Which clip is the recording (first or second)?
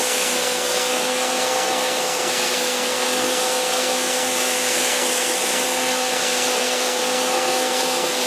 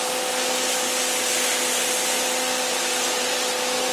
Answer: second